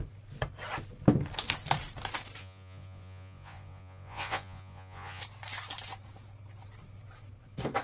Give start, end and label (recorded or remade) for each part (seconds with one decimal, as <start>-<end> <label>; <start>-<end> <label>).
0.0-2.4 recorded; 2.4-5.2 remade; 5.2-7.8 recorded